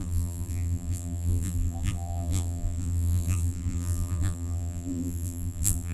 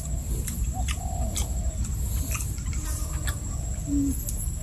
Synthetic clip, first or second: first